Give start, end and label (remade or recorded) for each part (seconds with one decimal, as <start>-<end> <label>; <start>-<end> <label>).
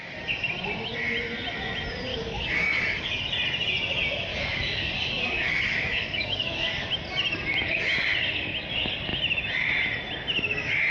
0.0-2.1 recorded; 2.1-3.2 remade; 3.2-4.3 recorded; 4.3-6.9 remade; 6.9-10.9 recorded